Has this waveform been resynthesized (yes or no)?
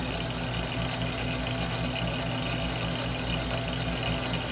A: no